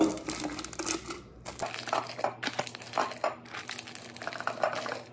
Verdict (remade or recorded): recorded